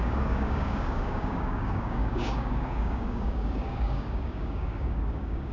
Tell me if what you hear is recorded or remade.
remade